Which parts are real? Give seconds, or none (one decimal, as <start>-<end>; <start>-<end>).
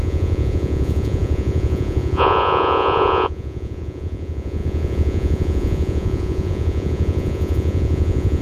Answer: none